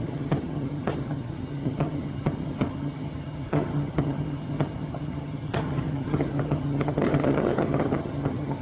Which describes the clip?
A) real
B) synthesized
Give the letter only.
B